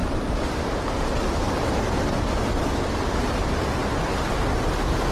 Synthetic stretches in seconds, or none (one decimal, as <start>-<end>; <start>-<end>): none